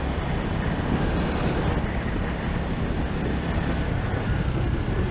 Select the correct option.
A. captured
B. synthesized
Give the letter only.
A